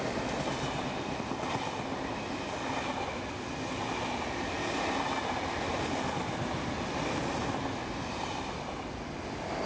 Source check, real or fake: real